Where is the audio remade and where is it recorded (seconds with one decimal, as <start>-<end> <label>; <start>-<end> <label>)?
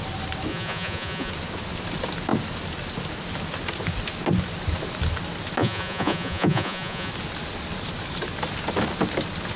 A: 0.0-0.5 recorded; 0.5-1.3 remade; 1.3-5.6 recorded; 5.6-7.1 remade; 7.1-9.6 recorded